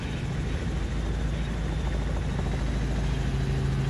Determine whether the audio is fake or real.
real